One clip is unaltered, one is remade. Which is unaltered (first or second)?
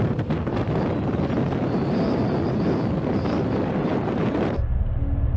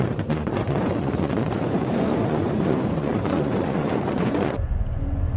first